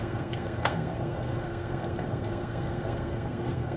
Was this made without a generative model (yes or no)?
no